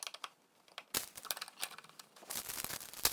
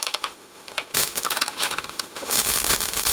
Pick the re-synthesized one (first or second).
second